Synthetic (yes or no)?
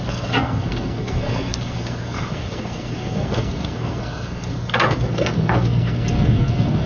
yes